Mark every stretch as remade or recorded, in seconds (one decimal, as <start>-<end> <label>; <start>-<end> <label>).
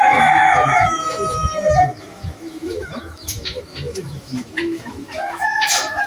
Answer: 0.0-6.1 remade